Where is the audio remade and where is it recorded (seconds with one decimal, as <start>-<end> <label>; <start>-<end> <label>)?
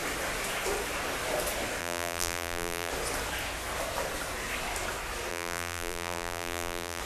0.0-1.8 recorded; 1.8-2.9 remade; 2.9-5.3 recorded; 5.3-7.0 remade